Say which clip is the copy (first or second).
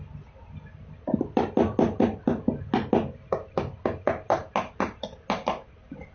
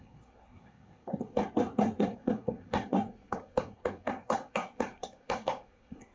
second